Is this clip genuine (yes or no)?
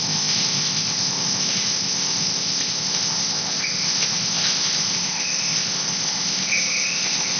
no